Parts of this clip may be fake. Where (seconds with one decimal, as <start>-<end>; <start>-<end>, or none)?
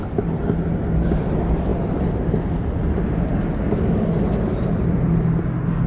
3.3-4.1